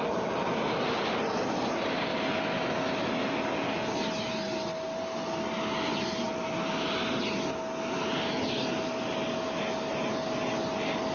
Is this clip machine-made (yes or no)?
no